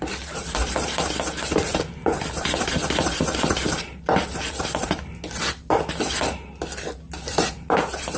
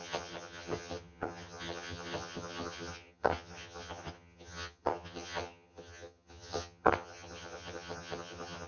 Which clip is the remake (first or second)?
second